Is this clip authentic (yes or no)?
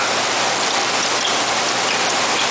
yes